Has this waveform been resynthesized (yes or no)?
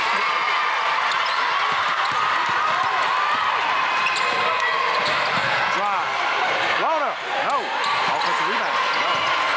no